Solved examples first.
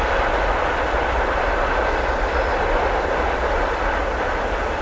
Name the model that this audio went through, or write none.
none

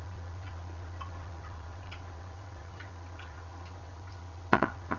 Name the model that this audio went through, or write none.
vocoder, WaveNeXt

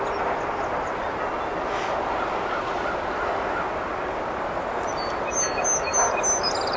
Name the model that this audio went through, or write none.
none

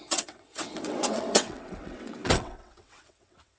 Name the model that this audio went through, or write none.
vocoder, WaveNeXt